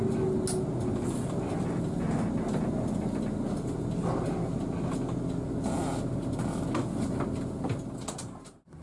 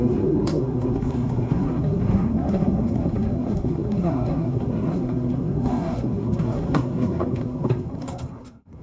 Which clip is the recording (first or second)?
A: first